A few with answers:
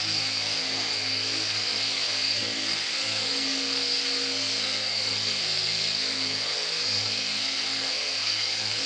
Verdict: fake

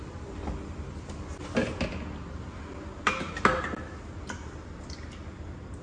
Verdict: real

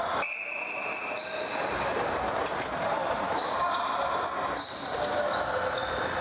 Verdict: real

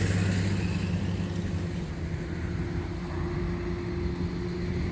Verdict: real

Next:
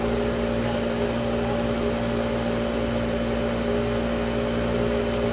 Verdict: real